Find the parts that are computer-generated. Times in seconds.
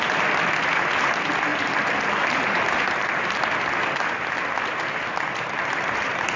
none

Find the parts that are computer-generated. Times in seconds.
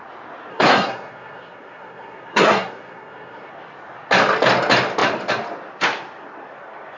0.5-3.5 (codec, SNAC)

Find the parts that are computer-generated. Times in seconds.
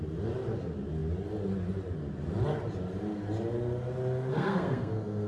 4.3-5.3 (codec, SNAC)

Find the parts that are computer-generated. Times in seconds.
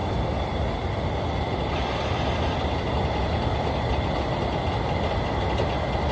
none